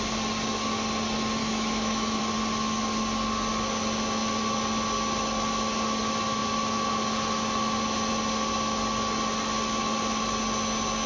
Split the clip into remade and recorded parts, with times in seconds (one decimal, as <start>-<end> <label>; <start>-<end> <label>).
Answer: 0.0-1.4 recorded; 1.4-2.2 remade; 2.2-11.1 recorded